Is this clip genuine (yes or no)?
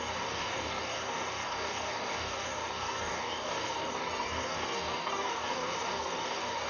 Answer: no